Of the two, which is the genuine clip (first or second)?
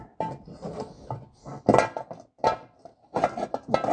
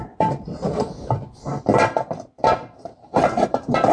first